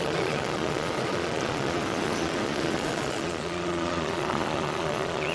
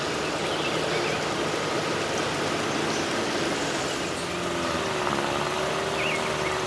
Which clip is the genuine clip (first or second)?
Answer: second